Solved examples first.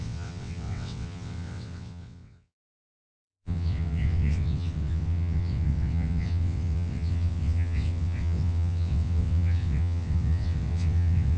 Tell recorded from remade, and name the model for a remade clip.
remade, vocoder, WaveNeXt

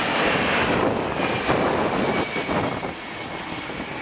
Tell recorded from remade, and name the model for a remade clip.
recorded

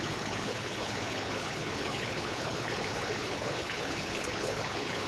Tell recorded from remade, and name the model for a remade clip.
remade, codec, HILCodec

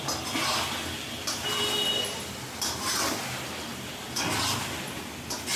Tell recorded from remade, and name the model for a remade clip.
recorded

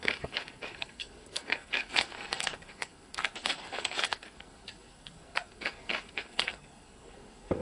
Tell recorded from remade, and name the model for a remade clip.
remade, codec, SNAC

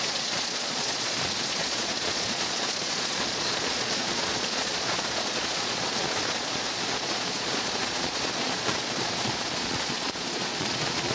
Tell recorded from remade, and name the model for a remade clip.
remade, vocoder, Vocos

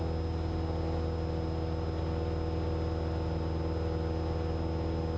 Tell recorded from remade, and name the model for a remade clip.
recorded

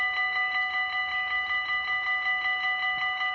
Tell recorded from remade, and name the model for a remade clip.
recorded